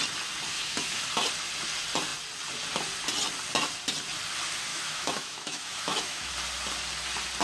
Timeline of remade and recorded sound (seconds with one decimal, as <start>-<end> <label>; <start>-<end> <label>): 0.0-0.5 recorded; 0.5-1.0 remade; 1.0-4.7 recorded; 4.7-6.3 remade; 6.3-7.4 recorded